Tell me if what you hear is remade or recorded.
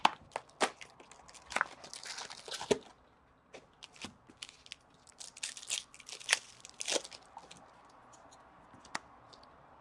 recorded